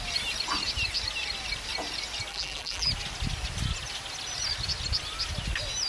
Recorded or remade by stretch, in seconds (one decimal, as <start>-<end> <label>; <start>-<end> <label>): 0.0-2.3 recorded; 2.3-2.9 remade; 2.9-5.9 recorded